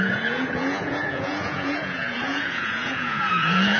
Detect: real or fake fake